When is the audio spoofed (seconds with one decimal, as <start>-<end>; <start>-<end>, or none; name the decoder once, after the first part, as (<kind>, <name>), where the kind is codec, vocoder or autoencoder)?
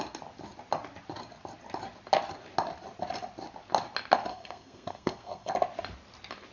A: 4.3-5.5 (codec, SNAC)